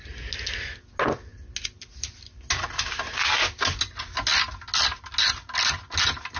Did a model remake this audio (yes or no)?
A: no